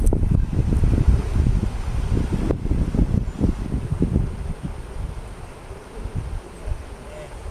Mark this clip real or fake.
real